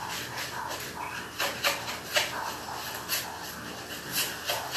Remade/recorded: recorded